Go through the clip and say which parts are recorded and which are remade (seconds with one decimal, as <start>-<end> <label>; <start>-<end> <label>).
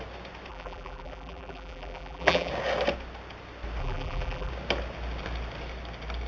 0.0-0.5 recorded; 0.5-2.5 remade; 2.5-3.8 recorded; 3.8-4.5 remade; 4.5-6.3 recorded